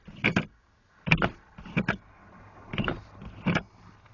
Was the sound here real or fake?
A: real